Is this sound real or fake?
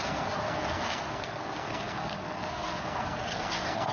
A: fake